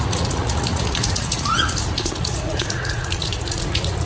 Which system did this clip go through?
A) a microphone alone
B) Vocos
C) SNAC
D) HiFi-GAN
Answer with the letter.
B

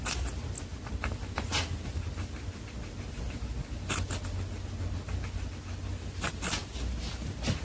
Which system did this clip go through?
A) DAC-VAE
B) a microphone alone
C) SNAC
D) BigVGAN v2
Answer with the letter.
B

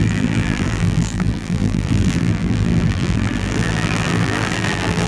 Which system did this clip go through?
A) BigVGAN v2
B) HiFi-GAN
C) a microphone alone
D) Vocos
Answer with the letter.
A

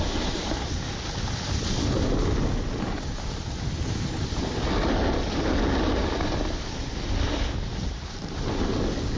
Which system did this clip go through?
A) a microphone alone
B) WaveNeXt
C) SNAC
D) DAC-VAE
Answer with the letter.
A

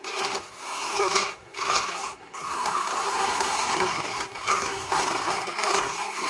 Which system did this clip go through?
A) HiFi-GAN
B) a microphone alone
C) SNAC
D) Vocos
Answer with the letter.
C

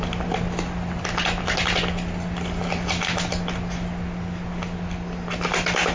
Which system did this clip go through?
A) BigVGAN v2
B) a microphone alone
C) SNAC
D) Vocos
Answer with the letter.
B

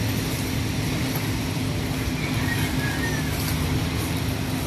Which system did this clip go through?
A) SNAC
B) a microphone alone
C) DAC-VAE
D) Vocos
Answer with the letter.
B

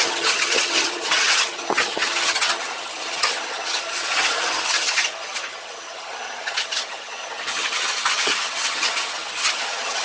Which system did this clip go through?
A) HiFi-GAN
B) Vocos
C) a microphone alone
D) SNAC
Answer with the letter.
A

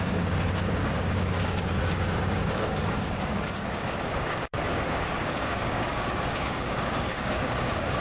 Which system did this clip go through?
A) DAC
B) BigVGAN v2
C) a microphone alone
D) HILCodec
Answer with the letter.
A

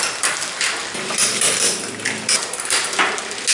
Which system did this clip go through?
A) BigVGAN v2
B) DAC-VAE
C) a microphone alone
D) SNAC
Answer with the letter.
C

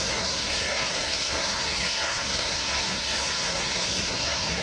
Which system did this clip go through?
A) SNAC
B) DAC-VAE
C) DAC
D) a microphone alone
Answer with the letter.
A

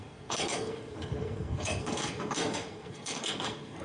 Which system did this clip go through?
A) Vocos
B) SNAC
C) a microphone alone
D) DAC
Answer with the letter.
B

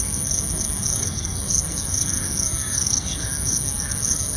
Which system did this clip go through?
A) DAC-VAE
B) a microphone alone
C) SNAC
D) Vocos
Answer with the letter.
C